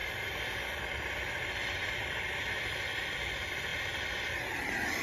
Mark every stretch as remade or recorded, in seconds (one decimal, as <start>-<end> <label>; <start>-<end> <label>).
0.0-5.0 recorded